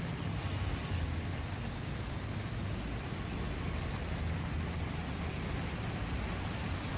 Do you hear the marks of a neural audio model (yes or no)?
no